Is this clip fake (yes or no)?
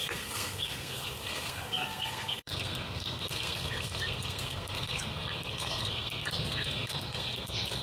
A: yes